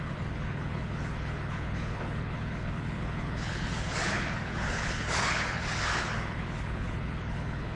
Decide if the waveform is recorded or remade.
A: remade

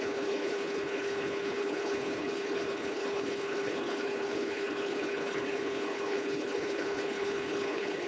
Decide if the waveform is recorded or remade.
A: remade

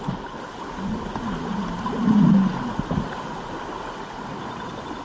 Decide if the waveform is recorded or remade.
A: recorded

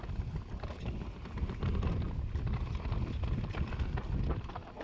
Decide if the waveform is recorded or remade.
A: recorded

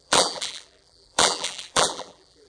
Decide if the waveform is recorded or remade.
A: remade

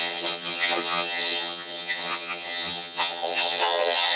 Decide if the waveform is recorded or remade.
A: remade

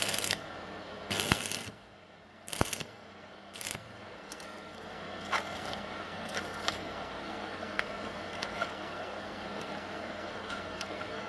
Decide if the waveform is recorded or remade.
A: remade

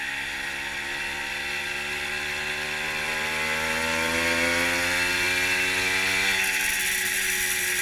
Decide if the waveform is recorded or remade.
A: recorded